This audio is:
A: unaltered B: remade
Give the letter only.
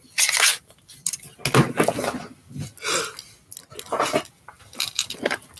A